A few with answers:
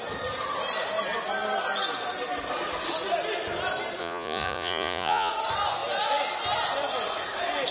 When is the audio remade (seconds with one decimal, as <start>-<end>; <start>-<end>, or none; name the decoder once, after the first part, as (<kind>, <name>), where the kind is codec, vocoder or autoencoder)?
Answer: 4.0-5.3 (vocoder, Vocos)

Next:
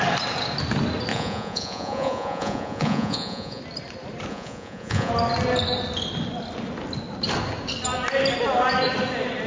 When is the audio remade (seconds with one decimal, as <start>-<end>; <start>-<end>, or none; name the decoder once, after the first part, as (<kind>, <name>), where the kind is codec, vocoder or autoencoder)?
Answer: 1.1-3.6 (vocoder, Vocos); 4.3-5.1

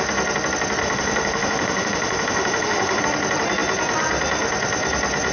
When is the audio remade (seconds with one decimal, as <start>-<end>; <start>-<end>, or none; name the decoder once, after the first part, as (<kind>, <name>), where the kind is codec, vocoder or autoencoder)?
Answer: 0.8-3.0 (autoencoder, DAC-VAE)